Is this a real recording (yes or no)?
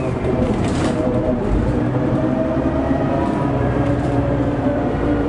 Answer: no